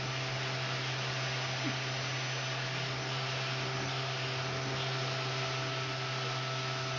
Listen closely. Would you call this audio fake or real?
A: real